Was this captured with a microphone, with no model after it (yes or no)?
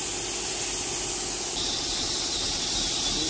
yes